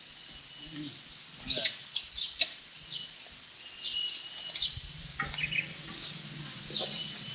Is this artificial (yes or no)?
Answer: no